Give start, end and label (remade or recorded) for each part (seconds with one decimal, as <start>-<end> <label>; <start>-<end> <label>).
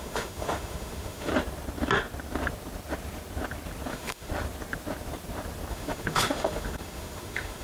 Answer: 0.0-1.3 remade; 1.3-3.9 recorded; 3.9-4.3 remade; 4.3-5.7 recorded; 5.7-7.6 remade